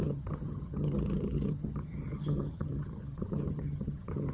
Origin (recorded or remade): remade